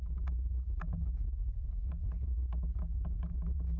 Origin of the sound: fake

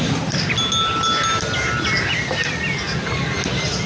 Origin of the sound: real